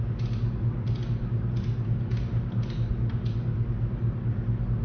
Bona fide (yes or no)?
yes